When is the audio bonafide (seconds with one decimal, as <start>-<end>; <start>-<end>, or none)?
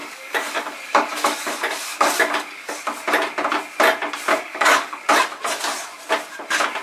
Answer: 2.8-4.3; 5.1-6.8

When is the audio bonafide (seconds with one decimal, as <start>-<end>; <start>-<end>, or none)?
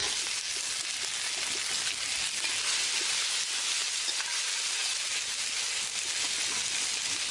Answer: 0.0-7.3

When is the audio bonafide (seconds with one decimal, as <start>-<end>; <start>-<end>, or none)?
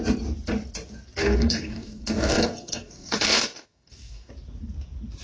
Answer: 0.0-1.2; 4.3-5.2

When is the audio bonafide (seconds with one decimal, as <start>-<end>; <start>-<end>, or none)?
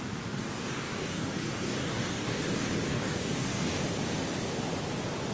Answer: 0.0-0.4; 2.4-2.9; 3.8-5.3